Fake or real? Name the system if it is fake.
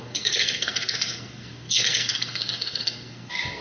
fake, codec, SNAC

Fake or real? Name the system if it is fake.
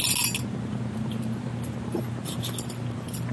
real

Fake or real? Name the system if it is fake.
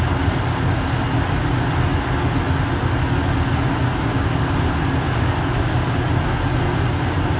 real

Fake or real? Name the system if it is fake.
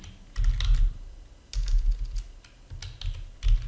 real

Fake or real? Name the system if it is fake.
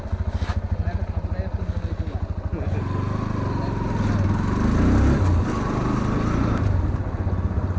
real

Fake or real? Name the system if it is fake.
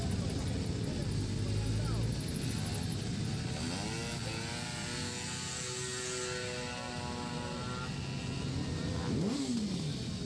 real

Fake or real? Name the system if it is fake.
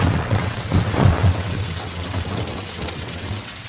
fake, vocoder, WaveNeXt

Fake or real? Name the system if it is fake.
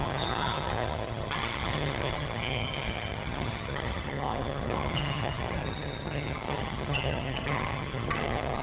fake, vocoder, HiFi-GAN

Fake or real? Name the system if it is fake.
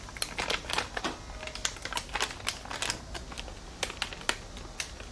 real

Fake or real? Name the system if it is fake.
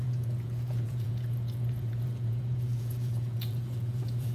fake, vocoder, Vocos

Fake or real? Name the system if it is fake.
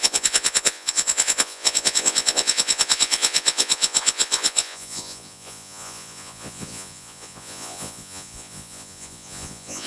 fake, vocoder, Vocos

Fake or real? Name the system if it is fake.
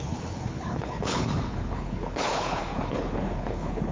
fake, codec, HILCodec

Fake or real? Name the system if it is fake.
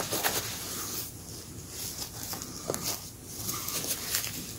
real